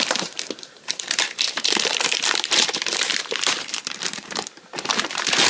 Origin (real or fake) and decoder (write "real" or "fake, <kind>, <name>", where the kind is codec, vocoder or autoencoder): fake, vocoder, BigVGAN v2